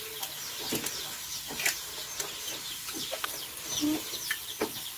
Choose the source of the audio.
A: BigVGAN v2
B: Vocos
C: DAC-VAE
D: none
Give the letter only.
D